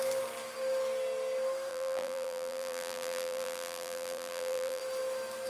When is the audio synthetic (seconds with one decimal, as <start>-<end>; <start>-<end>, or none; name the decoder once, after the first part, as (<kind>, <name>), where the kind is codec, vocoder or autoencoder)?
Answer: 1.7-4.8 (vocoder, BigVGAN v2)